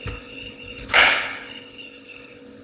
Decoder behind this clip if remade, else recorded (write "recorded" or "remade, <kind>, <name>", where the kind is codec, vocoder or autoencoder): remade, codec, HILCodec